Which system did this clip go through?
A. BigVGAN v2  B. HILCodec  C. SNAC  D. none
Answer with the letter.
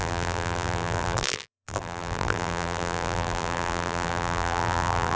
A